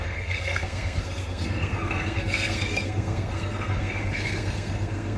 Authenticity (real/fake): fake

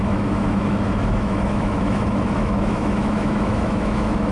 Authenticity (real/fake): fake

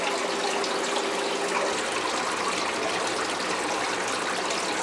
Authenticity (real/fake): real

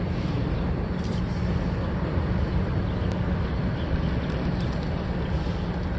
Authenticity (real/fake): real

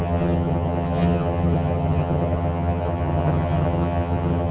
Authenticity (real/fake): fake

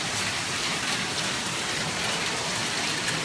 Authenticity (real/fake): real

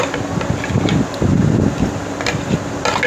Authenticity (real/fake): real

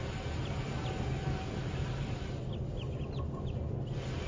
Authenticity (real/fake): real